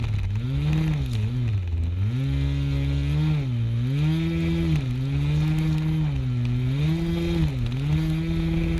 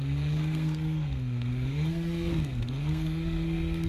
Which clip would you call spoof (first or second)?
second